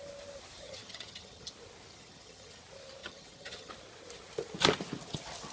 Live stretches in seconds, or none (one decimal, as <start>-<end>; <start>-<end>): 0.0-0.6; 1.5-1.9; 2.6-3.0; 3.7-5.5